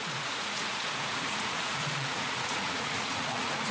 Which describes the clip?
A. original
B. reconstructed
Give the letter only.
B